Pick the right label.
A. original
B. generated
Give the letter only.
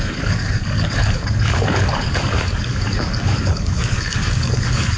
B